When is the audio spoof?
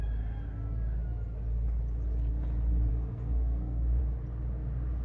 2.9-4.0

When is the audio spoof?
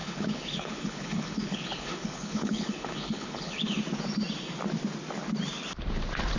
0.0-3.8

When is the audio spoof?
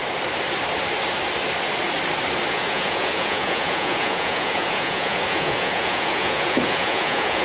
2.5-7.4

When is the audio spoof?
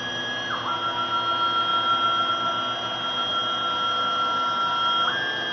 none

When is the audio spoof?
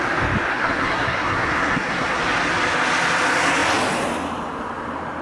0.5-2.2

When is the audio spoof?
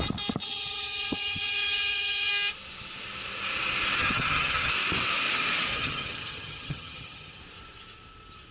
0.4-2.3; 4.0-4.7; 5.7-7.4